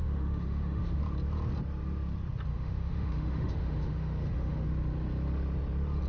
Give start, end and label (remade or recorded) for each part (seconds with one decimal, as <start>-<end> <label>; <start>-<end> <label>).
0.0-1.0 remade; 1.0-2.5 recorded; 2.5-4.7 remade; 4.7-6.1 recorded